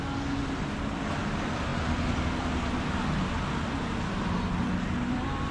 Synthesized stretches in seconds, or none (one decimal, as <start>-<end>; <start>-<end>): none